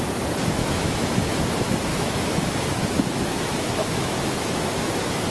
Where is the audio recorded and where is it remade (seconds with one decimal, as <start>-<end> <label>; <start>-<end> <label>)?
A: 0.0-0.6 recorded; 0.6-1.4 remade; 1.4-1.9 recorded; 1.9-5.3 remade